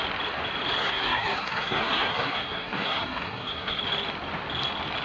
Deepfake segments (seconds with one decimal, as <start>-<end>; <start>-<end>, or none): 0.8-3.8